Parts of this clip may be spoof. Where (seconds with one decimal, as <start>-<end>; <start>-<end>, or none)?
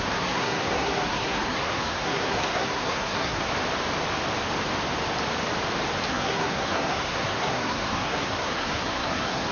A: 0.0-3.5; 6.1-9.5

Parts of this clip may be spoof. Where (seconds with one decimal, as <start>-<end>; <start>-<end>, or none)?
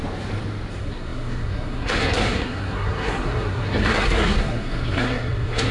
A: 0.7-5.7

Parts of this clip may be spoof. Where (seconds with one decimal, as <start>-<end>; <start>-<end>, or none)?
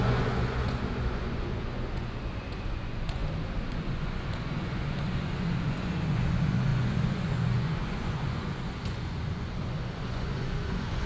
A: 0.0-3.2; 3.7-11.1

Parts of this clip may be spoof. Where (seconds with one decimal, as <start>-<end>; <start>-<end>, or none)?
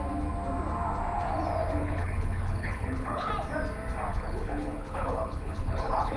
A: 1.8-3.3; 4.1-6.2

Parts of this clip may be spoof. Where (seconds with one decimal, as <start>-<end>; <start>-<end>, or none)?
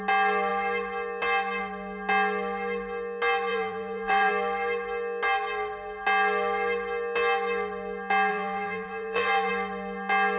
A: 3.5-4.3; 8.3-9.5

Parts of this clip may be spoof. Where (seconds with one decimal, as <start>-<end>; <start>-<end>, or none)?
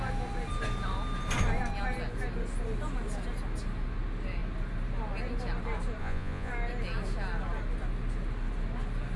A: 6.0-6.5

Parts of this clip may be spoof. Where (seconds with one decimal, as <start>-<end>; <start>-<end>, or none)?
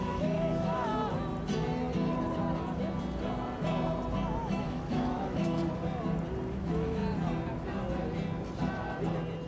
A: 0.0-0.9; 4.4-5.6; 6.5-7.0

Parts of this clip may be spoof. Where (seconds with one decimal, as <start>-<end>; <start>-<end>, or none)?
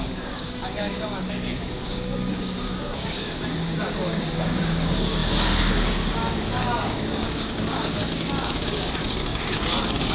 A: 0.0-10.1